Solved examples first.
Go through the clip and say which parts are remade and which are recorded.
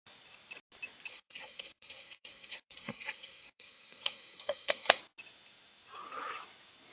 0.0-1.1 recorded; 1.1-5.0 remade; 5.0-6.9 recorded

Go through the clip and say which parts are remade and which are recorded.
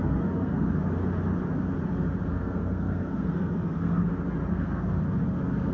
0.0-0.8 remade; 0.8-2.3 recorded; 2.3-4.1 remade; 4.1-4.5 recorded; 4.5-5.0 remade; 5.0-5.7 recorded